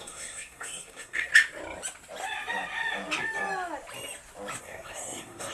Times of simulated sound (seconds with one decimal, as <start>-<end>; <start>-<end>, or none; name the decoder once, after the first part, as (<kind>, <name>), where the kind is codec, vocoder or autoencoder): 0.0-1.3 (codec, SNAC); 4.6-5.5